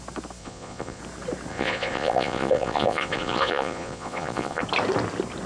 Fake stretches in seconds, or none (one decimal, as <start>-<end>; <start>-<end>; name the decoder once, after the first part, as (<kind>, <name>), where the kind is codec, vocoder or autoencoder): 0.4-1.0 (vocoder, Vocos); 1.5-4.6